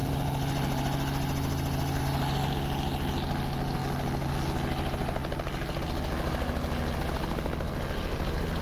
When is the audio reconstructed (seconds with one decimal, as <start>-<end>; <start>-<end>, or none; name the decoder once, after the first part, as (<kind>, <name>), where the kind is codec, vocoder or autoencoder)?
none